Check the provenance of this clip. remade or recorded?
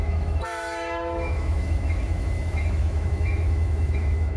remade